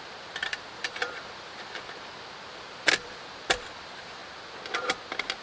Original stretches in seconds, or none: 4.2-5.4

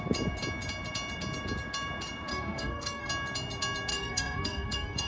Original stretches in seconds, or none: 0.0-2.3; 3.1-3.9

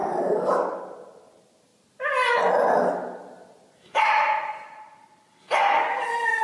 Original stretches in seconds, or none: 0.0-6.4

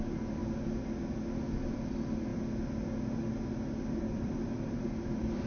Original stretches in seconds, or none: 0.4-1.6; 2.3-3.9

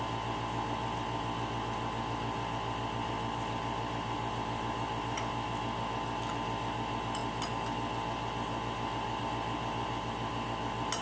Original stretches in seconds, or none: 0.0-11.0

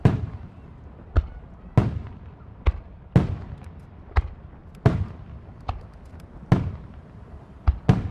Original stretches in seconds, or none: 0.0-8.1

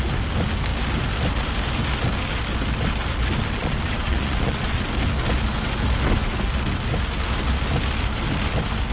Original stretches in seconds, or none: 0.0-3.6; 4.8-8.9